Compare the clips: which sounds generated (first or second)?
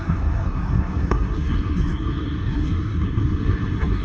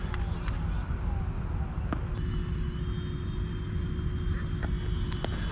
first